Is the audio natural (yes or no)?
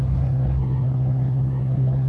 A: no